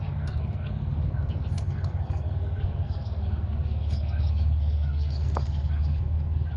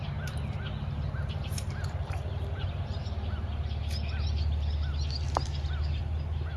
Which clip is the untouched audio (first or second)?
second